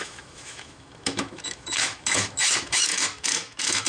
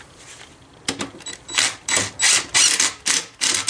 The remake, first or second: first